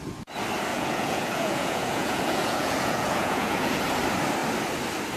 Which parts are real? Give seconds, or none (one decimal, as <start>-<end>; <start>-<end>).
0.0-0.7; 3.8-5.2